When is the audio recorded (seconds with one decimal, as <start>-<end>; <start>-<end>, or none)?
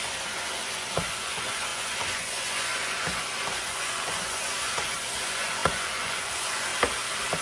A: 6.7-7.4